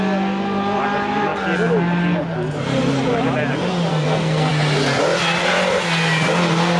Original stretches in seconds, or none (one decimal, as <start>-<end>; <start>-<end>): 0.0-3.9; 4.5-6.8